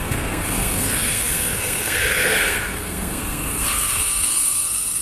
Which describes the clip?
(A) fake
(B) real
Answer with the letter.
A